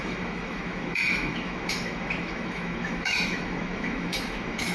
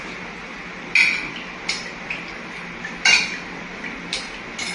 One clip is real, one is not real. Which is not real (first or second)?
first